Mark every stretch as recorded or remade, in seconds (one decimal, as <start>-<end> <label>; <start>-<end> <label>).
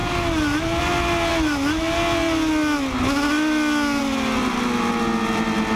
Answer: 0.0-5.8 recorded